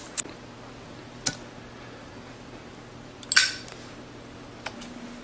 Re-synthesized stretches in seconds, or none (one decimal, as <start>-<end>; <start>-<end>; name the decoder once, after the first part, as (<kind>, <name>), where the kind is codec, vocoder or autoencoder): none